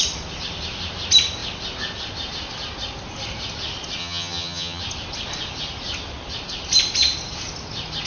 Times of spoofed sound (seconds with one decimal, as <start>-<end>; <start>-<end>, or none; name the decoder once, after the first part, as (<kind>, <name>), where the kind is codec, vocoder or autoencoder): 4.0-4.8 (vocoder, HiFi-GAN)